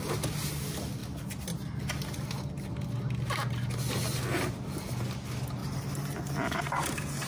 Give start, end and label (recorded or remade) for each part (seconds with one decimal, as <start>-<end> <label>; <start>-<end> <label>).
0.0-5.6 recorded; 5.6-7.3 remade